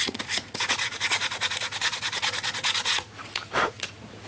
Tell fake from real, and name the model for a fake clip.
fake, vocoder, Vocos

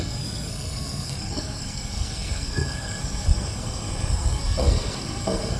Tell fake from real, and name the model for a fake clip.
fake, codec, SNAC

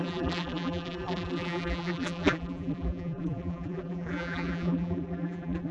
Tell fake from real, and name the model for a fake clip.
fake, vocoder, BigVGAN v2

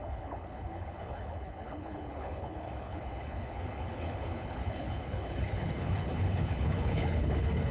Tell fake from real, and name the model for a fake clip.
fake, codec, HILCodec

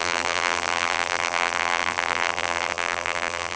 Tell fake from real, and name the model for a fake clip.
fake, vocoder, BigVGAN v2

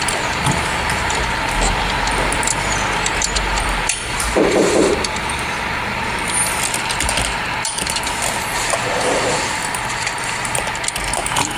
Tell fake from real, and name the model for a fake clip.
fake, vocoder, BigVGAN v2